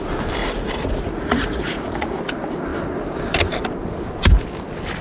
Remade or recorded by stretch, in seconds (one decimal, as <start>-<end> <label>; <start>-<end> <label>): 0.0-0.4 recorded; 0.4-2.2 remade; 2.2-5.0 recorded